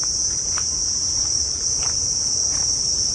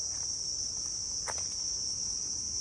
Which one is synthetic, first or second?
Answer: first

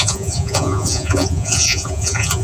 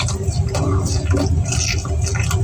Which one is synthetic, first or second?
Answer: first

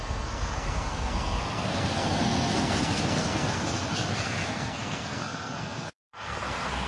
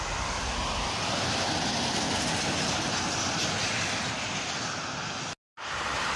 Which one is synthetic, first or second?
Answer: first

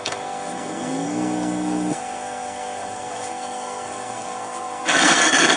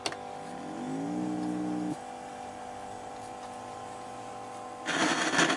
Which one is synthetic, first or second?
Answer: first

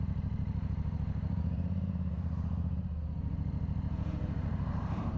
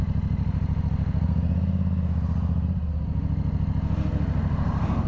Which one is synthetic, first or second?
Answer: first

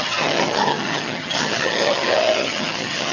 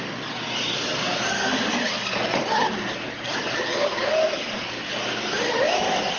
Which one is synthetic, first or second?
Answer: first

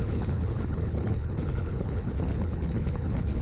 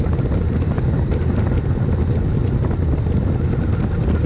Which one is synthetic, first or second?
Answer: first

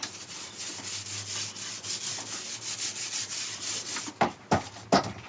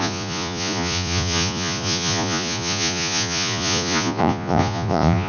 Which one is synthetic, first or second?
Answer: second